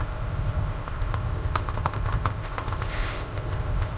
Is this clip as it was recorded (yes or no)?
no